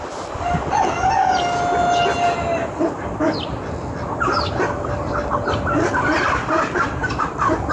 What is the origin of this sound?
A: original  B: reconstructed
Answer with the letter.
A